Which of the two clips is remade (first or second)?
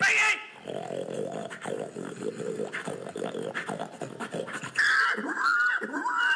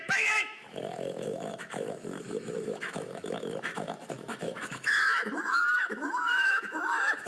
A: second